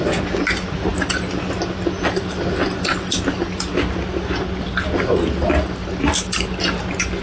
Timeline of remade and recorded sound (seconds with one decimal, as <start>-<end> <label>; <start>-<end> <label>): 0.0-7.2 recorded